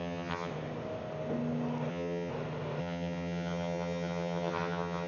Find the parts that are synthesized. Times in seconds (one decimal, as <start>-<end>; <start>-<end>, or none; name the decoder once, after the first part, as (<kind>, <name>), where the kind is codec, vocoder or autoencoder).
0.0-0.5 (vocoder, HiFi-GAN); 1.9-2.3; 2.8-5.1